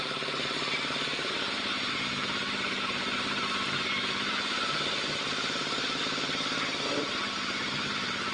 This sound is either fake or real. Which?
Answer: fake